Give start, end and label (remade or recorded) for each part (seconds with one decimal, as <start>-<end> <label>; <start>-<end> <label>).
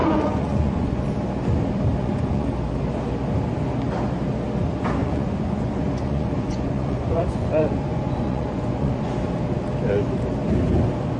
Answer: 0.0-1.0 remade; 1.0-2.0 recorded; 2.0-2.5 remade; 2.5-5.0 recorded; 5.0-9.1 remade; 9.1-11.2 recorded